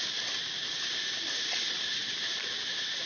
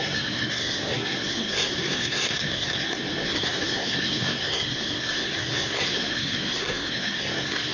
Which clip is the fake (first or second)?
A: second